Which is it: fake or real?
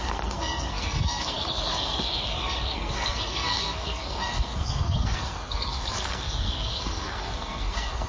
fake